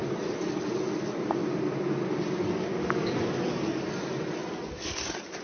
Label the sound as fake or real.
real